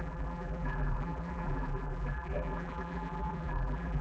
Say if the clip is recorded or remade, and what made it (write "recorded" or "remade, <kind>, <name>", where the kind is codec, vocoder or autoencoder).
remade, vocoder, BigVGAN v2